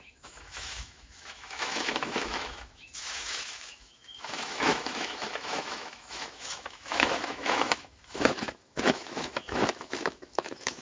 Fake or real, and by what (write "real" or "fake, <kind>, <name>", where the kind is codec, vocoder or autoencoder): fake, autoencoder, DAC-VAE